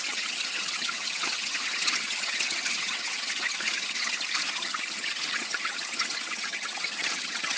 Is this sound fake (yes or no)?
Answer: yes